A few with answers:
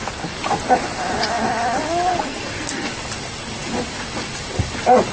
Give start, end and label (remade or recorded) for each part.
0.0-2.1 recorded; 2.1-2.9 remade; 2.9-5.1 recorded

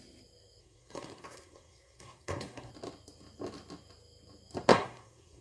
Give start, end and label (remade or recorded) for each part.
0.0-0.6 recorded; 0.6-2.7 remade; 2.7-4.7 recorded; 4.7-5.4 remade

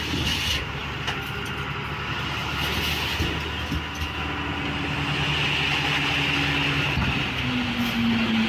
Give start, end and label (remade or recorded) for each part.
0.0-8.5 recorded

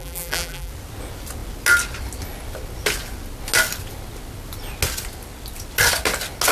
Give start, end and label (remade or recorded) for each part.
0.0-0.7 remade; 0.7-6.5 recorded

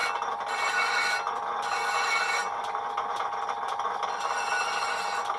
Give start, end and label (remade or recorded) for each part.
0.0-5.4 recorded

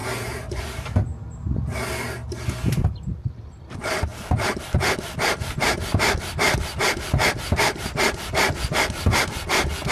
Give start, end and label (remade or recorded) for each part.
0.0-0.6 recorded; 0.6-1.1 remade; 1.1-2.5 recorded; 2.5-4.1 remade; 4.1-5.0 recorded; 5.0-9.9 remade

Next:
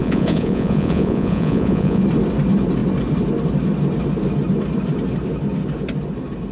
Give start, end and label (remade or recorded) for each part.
0.0-2.0 remade; 2.0-6.5 recorded